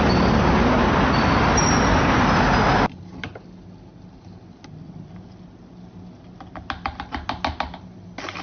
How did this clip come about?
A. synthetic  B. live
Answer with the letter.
B